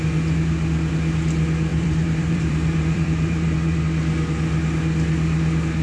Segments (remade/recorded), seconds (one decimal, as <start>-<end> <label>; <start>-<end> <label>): 0.0-1.7 recorded; 1.7-3.8 remade; 3.8-5.8 recorded